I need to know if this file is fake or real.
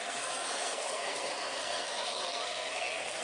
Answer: fake